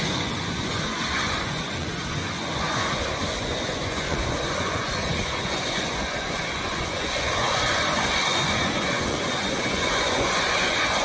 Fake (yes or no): yes